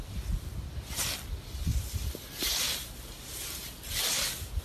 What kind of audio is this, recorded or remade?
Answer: recorded